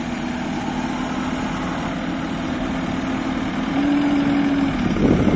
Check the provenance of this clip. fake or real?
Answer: real